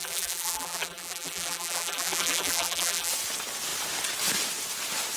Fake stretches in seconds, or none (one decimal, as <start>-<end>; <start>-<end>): 0.0-3.1